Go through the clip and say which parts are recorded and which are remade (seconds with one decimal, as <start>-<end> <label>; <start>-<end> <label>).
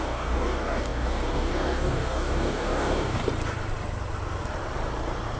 0.0-3.2 remade; 3.2-5.4 recorded